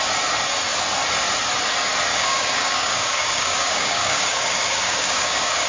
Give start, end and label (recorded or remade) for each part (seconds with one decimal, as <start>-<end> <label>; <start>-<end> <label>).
0.0-2.1 recorded; 2.1-5.7 remade